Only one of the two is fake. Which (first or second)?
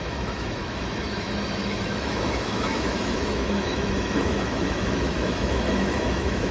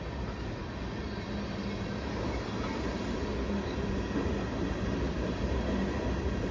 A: first